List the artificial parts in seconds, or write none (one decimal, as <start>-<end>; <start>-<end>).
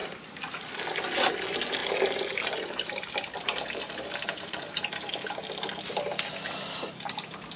none